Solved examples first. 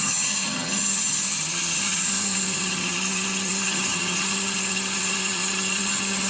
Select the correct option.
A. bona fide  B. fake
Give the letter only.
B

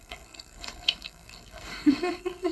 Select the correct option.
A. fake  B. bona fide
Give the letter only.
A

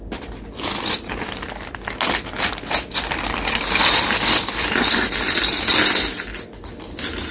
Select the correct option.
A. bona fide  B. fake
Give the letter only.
A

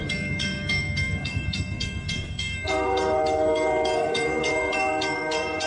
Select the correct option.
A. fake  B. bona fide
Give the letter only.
A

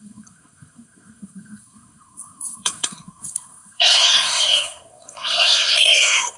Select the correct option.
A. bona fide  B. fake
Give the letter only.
B